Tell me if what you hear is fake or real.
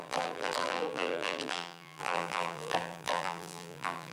fake